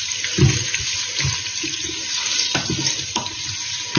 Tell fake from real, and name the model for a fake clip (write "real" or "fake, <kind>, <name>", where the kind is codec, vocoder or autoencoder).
real